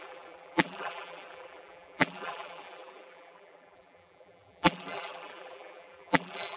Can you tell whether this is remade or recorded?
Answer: remade